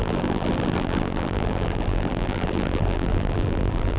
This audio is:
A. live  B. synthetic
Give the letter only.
B